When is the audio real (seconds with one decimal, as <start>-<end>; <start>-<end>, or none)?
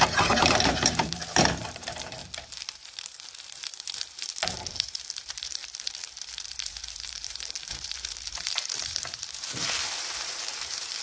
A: 5.6-6.2